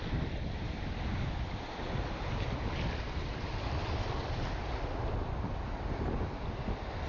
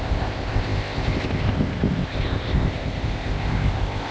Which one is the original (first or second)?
first